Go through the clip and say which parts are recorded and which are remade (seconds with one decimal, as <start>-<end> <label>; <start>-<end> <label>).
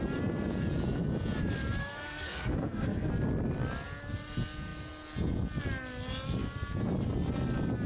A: 0.0-1.8 recorded; 1.8-3.1 remade; 3.1-7.9 recorded